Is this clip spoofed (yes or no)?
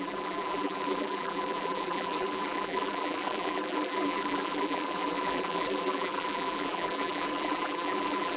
yes